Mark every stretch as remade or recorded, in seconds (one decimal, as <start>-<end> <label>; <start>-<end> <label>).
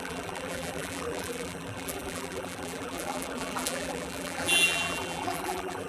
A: 0.0-5.9 remade